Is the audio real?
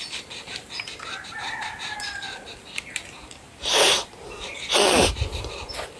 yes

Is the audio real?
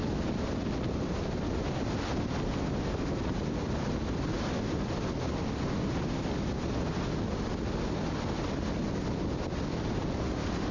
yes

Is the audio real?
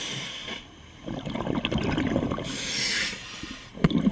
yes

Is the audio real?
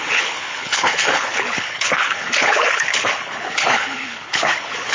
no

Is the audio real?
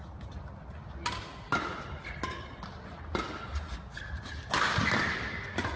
yes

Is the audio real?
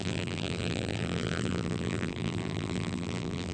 no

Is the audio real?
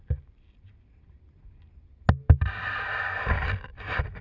yes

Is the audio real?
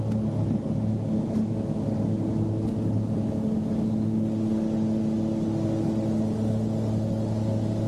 yes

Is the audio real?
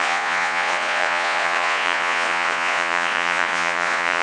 no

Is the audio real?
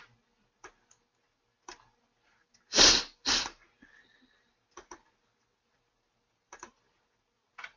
yes